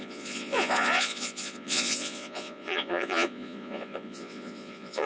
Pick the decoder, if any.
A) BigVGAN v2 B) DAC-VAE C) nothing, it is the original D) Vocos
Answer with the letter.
D